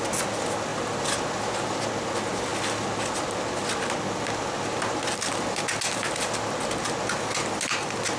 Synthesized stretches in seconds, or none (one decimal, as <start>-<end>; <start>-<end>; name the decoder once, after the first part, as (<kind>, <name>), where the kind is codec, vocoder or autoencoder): none